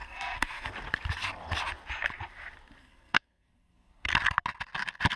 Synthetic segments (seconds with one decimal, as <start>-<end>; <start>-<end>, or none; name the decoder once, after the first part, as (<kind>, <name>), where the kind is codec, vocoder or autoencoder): 0.0-0.7 (codec, SNAC); 2.8-4.1